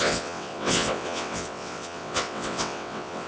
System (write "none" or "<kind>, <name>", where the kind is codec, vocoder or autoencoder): vocoder, WaveNeXt